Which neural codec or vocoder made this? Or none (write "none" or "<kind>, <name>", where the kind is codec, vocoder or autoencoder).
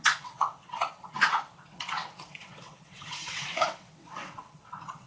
vocoder, WaveNeXt